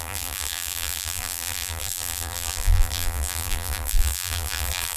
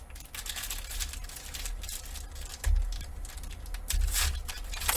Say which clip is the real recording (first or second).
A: second